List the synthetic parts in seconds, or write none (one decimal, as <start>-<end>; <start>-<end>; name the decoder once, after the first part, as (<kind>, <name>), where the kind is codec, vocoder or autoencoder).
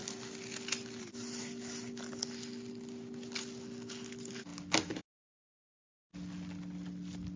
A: none